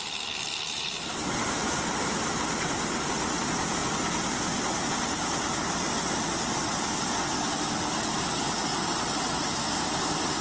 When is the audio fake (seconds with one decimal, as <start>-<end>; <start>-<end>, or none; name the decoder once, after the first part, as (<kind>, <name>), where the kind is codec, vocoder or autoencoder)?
none